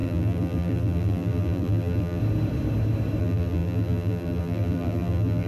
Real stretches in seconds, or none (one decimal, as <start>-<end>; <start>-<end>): 2.2-3.2